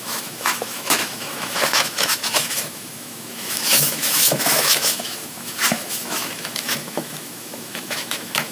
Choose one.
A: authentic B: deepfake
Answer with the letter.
B